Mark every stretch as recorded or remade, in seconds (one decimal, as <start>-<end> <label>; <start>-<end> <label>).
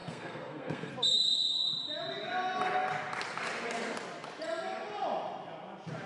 0.0-0.9 remade; 0.9-6.1 recorded